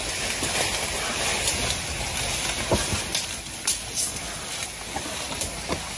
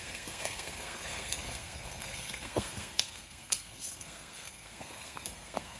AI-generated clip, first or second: second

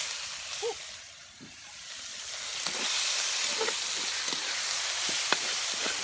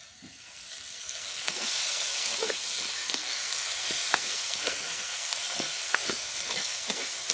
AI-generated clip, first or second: second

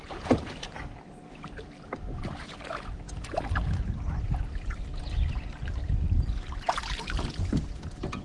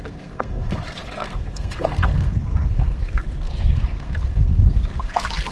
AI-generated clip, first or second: second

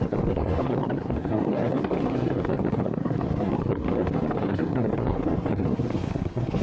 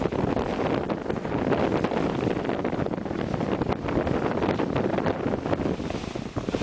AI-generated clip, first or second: first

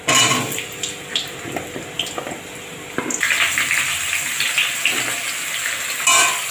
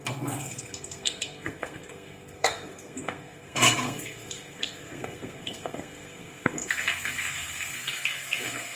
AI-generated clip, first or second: second